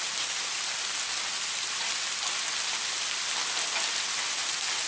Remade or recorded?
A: recorded